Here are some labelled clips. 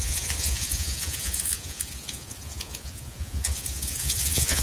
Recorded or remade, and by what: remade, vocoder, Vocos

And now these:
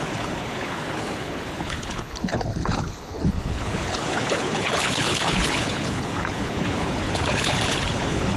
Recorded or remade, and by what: remade, codec, HILCodec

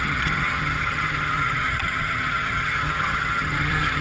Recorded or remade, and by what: remade, vocoder, HiFi-GAN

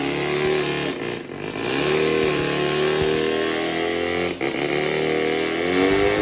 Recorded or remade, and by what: recorded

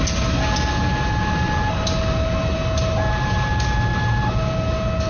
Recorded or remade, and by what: recorded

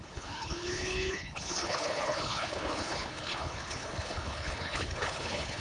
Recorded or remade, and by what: remade, codec, HILCodec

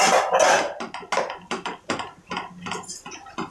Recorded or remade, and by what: recorded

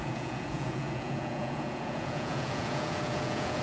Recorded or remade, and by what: remade, vocoder, Vocos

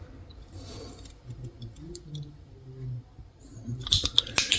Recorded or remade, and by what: recorded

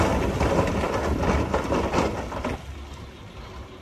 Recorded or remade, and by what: recorded